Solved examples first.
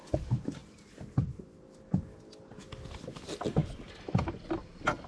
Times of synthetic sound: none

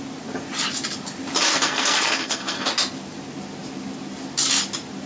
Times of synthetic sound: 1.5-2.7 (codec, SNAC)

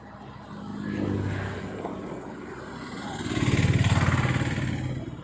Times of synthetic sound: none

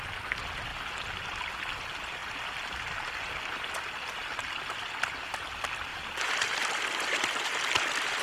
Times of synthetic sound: none